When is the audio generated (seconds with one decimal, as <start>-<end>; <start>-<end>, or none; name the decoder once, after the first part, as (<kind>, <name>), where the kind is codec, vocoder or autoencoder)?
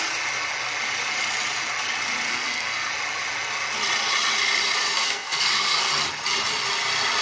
2.3-2.9 (codec, SNAC); 4.8-5.9